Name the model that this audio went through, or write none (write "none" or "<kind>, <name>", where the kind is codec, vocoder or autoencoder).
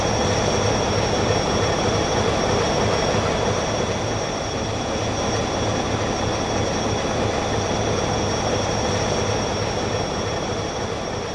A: none